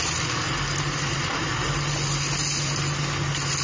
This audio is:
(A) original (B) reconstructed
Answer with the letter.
A